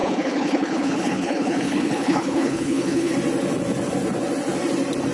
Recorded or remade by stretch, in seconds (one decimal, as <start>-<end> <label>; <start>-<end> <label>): 0.0-3.1 remade; 3.1-5.1 recorded